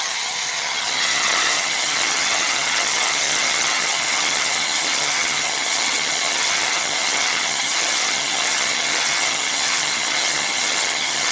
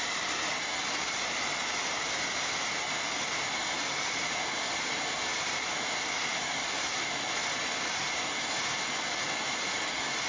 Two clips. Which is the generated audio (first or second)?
first